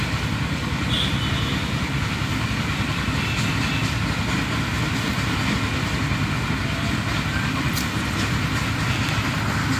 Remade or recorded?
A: recorded